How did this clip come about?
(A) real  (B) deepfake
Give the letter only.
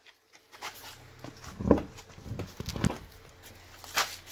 A